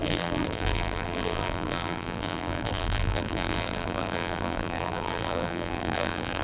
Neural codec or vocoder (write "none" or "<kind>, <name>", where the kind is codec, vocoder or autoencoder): vocoder, BigVGAN v2